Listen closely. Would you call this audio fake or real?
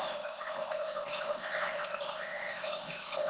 fake